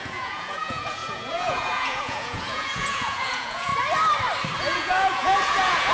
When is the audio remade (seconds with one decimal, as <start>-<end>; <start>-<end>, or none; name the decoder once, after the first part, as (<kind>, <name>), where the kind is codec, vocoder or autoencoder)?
0.0-3.7 (vocoder, Vocos); 4.6-5.9